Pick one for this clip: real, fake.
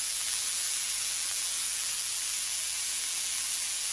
fake